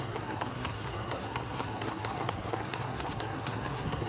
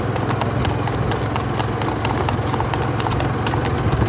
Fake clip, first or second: first